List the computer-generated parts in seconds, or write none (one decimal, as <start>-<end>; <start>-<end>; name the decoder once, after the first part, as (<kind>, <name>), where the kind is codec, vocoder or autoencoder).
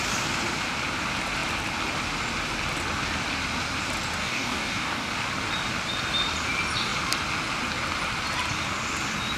4.2-5.1 (codec, DAC)